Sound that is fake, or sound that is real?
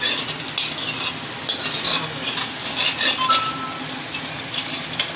real